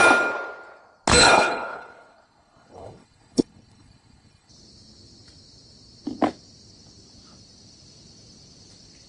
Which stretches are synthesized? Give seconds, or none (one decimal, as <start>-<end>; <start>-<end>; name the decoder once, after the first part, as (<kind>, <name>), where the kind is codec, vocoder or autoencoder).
1.2-4.5 (codec, HILCodec)